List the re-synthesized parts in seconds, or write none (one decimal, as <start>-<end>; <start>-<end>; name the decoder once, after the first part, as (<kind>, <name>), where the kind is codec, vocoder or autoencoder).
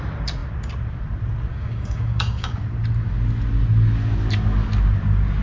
1.5-2.6 (codec, DAC)